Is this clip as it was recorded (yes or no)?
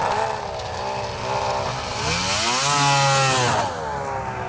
yes